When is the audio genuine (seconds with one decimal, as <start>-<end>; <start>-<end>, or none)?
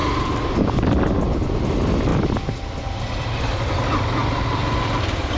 0.0-5.4